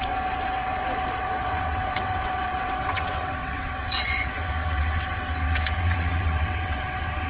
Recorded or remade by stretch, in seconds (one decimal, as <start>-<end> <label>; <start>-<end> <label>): 0.0-7.3 remade